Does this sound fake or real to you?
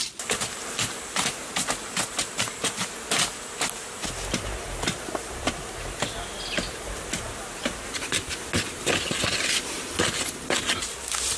real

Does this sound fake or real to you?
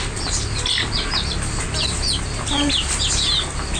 real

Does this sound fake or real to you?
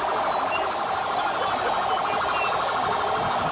real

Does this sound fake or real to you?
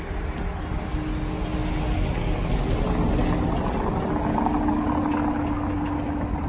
real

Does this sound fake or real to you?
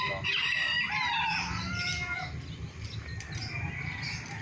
real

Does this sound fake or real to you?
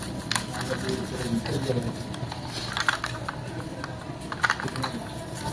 real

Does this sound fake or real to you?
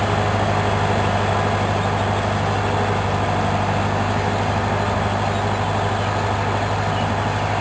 real